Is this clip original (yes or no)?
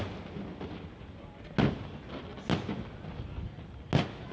yes